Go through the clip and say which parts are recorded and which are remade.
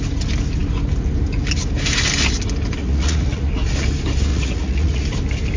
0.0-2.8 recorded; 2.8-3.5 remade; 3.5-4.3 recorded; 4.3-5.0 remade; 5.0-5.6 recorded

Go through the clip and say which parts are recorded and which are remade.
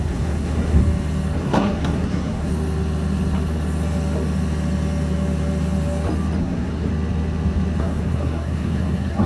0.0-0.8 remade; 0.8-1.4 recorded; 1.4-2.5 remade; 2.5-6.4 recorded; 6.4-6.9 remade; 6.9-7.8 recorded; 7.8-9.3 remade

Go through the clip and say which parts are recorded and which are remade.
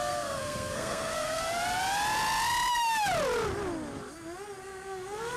0.0-1.4 remade; 1.4-4.6 recorded; 4.6-5.4 remade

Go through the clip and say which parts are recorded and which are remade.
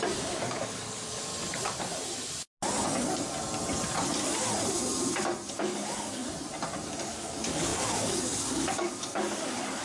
0.0-1.3 remade; 1.3-5.5 recorded; 5.5-6.2 remade; 6.2-7.0 recorded; 7.0-9.8 remade